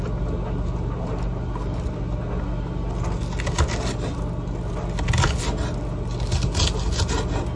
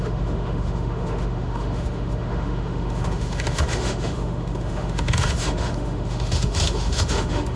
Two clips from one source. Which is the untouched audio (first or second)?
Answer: first